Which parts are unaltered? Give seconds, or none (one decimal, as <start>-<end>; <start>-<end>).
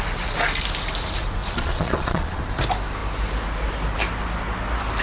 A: 0.0-1.4; 2.4-5.0